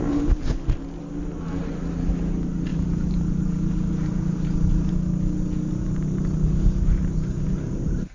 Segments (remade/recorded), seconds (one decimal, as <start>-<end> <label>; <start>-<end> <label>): 0.0-2.7 recorded; 2.7-4.9 remade; 4.9-8.1 recorded